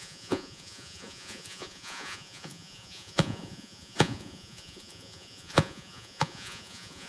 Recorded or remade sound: remade